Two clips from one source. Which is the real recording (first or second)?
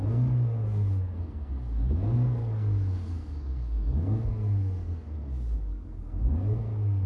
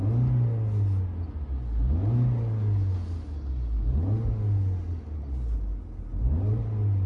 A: second